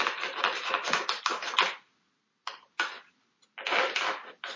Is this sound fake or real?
real